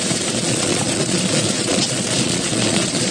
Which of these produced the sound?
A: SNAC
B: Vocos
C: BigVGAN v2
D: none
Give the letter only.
B